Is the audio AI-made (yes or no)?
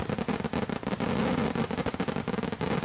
no